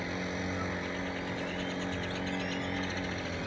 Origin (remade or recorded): recorded